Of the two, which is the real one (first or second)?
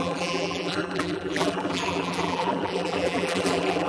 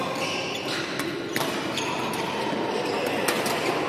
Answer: second